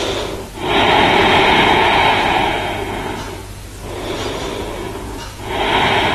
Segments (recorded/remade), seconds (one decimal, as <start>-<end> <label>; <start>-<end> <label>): 0.0-1.2 recorded; 1.2-2.7 remade; 2.7-4.7 recorded; 4.7-5.5 remade; 5.5-6.1 recorded